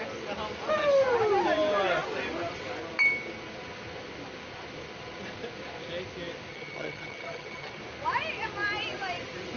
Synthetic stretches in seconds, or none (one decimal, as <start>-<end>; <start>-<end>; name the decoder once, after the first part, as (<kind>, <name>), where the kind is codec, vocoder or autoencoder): 6.5-7.8 (vocoder, HiFi-GAN)